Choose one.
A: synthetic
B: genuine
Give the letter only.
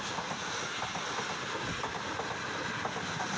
B